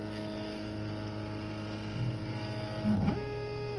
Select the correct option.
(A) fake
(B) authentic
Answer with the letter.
B